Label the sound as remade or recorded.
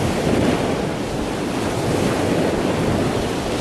recorded